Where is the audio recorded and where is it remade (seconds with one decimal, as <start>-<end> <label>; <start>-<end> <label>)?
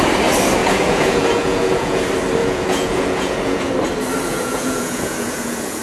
0.0-0.6 recorded; 0.6-2.0 remade; 2.0-2.4 recorded; 2.4-3.7 remade; 3.7-4.3 recorded; 4.3-5.8 remade